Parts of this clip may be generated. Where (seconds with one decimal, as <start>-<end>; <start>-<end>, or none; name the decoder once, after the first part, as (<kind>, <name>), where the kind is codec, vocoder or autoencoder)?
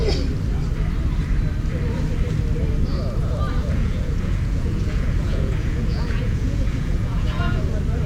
3.6-7.6 (vocoder, Vocos)